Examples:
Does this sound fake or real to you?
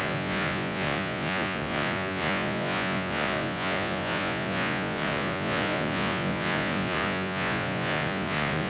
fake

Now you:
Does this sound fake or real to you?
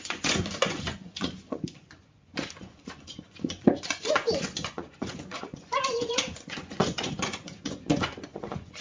fake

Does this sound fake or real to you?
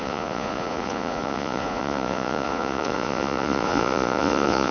fake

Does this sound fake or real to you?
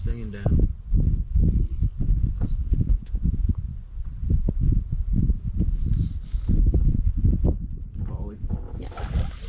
real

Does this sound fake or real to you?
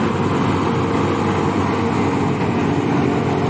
real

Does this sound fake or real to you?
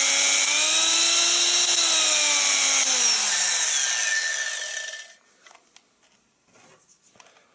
real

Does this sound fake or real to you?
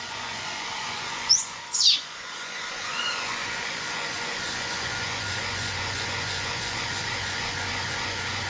fake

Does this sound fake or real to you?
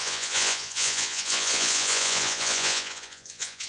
fake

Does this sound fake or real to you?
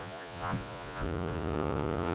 fake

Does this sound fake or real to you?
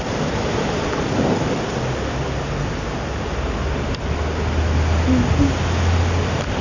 real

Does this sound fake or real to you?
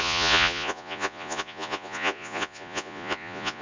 fake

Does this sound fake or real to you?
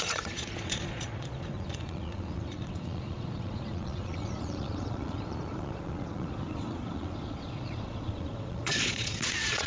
fake